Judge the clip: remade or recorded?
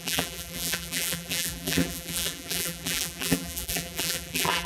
remade